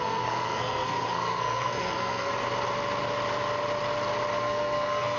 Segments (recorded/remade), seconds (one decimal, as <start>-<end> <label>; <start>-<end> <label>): 0.0-2.3 remade; 2.3-4.4 recorded; 4.4-5.2 remade